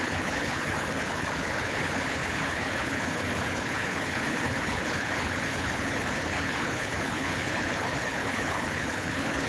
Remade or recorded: remade